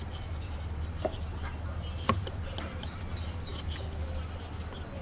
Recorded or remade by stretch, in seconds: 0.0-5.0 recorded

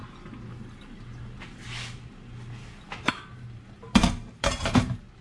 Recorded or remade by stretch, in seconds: 0.0-3.1 recorded; 3.1-5.2 remade

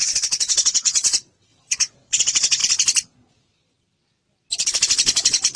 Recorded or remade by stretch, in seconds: 0.0-2.6 remade; 2.6-5.6 recorded

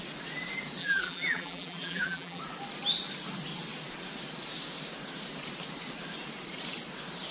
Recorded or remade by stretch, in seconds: 0.0-0.8 recorded; 0.8-2.4 remade; 2.4-7.3 recorded